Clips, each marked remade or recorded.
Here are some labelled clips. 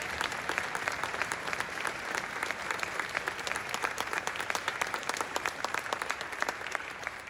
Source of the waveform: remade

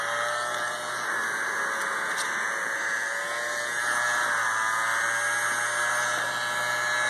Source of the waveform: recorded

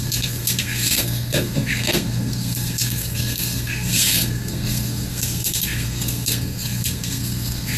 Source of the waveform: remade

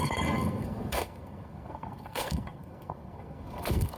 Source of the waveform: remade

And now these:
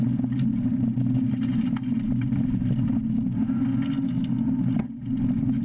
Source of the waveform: recorded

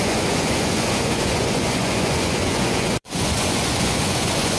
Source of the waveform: remade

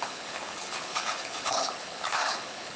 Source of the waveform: remade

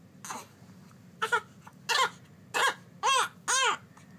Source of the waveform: recorded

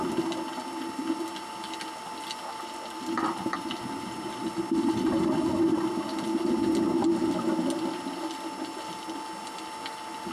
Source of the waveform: recorded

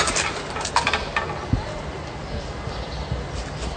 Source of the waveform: recorded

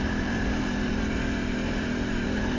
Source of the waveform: remade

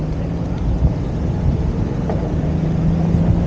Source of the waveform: recorded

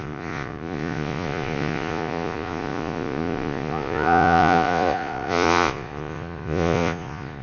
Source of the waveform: remade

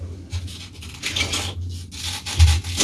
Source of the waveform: recorded